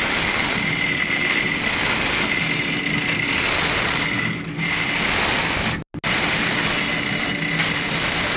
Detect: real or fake real